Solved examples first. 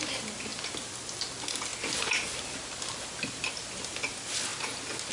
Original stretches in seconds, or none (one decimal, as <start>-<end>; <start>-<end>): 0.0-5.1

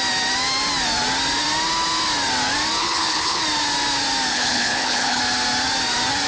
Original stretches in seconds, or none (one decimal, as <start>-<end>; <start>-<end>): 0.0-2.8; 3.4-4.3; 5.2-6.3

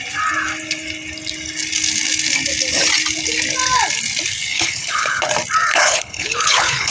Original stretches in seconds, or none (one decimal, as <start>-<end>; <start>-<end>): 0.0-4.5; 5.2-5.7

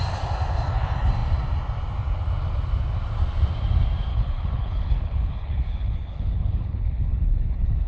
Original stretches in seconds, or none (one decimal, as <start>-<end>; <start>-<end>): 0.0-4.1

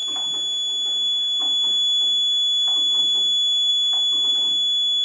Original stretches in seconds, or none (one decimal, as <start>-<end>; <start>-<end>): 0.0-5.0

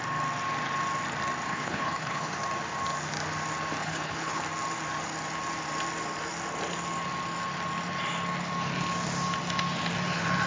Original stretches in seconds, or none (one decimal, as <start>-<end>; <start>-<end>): 0.0-1.5; 2.3-3.8; 4.4-10.5

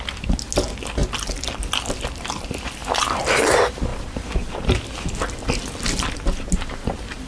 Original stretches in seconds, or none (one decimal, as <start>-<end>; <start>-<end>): 0.0-7.3

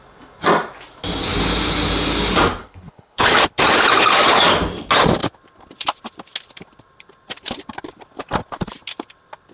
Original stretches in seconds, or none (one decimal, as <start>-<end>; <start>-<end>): 0.0-2.6; 3.3-9.5